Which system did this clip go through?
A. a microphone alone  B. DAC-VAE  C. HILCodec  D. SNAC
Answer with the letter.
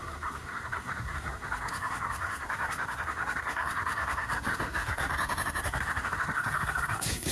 D